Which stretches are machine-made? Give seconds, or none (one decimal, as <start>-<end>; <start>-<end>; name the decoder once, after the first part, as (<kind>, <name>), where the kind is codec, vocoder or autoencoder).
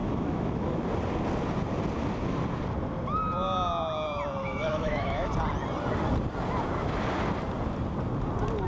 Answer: 0.0-0.8 (autoencoder, DAC-VAE); 4.4-5.3